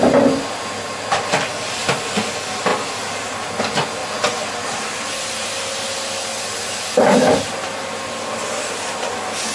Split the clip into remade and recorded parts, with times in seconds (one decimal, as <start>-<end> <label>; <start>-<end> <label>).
0.0-9.5 recorded